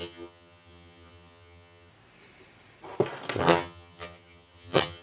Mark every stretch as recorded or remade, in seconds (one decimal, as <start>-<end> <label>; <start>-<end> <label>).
0.0-1.9 remade; 1.9-3.4 recorded; 3.4-5.0 remade